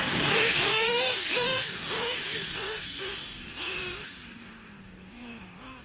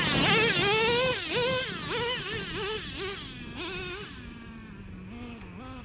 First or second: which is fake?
first